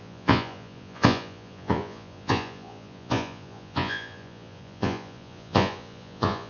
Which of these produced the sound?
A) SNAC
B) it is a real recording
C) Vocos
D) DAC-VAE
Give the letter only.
C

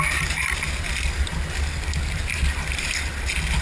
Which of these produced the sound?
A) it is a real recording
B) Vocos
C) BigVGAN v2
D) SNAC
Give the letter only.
A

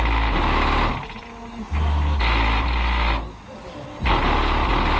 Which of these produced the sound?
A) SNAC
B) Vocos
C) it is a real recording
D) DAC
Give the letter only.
C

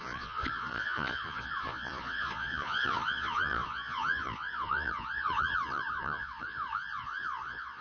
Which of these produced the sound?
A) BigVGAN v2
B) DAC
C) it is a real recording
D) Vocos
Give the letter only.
D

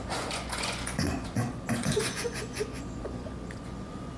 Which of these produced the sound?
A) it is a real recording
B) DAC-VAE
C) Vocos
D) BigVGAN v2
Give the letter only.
C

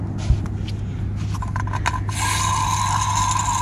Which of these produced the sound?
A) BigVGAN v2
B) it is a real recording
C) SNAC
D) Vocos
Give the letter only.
B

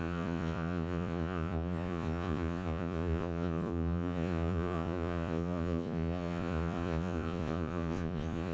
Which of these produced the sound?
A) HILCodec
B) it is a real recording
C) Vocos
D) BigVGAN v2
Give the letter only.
C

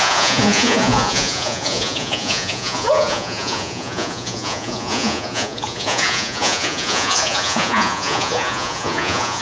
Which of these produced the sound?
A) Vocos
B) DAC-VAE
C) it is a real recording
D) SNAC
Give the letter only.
A